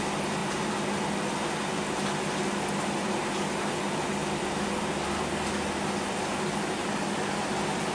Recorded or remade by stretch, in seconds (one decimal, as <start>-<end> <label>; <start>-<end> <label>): 0.0-7.9 recorded